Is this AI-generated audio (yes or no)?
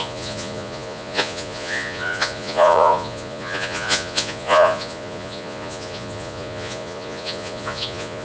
yes